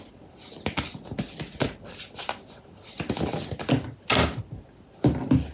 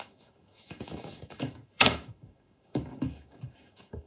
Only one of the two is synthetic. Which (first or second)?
second